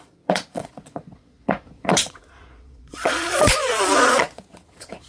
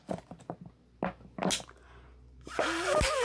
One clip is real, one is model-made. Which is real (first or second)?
second